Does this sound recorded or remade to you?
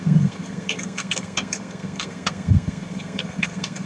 remade